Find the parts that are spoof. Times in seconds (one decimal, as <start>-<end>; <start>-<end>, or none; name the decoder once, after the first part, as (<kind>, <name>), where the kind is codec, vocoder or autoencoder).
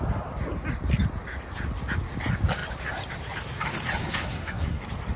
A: 4.0-4.8 (codec, SNAC)